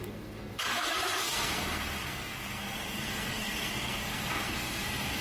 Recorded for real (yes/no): no